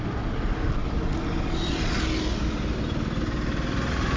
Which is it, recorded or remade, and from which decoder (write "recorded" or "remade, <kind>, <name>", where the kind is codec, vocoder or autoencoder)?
recorded